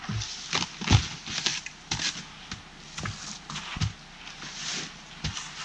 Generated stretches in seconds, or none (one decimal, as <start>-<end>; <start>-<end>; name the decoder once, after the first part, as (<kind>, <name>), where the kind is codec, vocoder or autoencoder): none